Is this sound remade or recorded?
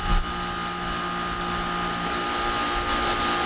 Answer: recorded